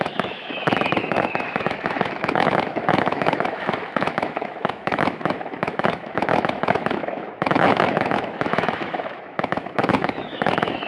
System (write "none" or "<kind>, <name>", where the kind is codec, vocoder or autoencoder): autoencoder, DAC-VAE